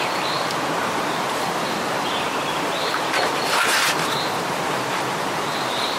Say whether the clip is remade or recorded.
remade